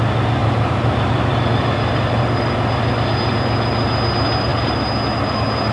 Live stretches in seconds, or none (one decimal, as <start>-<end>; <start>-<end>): 0.0-0.4; 2.2-5.7